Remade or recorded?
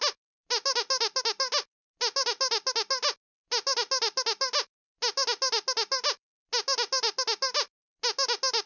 recorded